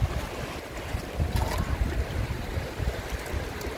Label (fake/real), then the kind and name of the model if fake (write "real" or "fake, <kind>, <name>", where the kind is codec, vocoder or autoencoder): real